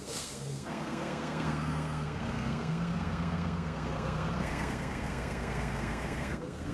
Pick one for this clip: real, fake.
fake